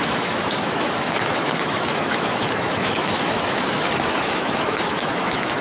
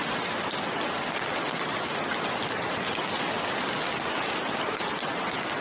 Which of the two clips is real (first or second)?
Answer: second